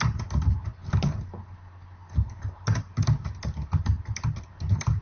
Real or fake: real